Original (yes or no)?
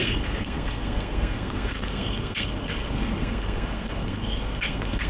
no